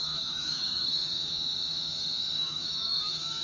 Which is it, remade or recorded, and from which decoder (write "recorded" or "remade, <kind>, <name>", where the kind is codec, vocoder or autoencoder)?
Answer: remade, codec, DAC